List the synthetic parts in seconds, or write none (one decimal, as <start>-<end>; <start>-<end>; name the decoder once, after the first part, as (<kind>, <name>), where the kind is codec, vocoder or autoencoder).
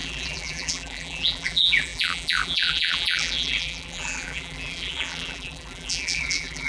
0.0-6.7 (vocoder, BigVGAN v2)